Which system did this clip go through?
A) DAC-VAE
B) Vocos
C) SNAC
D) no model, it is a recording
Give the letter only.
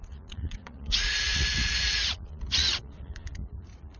B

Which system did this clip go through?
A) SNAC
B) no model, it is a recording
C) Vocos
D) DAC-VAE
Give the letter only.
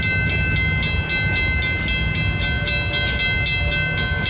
B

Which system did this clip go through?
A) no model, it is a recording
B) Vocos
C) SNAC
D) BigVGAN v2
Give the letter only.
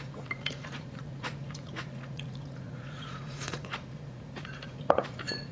B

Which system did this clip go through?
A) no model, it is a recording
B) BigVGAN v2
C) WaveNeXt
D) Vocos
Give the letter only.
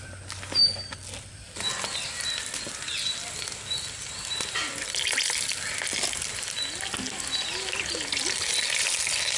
A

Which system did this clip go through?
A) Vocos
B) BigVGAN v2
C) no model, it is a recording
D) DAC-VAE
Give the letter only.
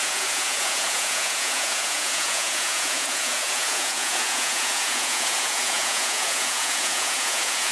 A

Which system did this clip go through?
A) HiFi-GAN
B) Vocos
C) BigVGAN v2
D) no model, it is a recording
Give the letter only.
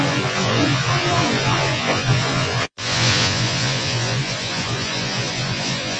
B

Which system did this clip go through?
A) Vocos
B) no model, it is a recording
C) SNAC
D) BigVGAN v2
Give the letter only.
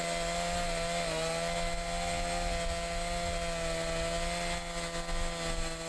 B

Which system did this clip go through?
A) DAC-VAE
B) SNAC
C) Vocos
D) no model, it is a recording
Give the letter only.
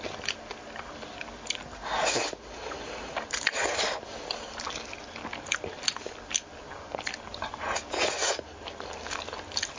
D